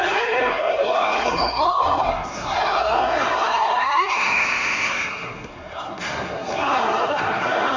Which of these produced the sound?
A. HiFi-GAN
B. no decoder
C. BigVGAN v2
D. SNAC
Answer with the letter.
D